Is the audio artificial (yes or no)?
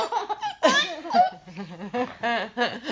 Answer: no